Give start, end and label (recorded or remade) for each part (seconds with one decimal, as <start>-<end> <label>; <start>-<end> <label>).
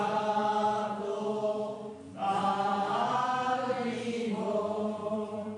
0.0-0.4 remade; 0.4-2.6 recorded; 2.6-5.6 remade